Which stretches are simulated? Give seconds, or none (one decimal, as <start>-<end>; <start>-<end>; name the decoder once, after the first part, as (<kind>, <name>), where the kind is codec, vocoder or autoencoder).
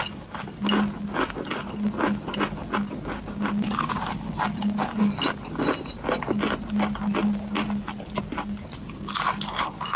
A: none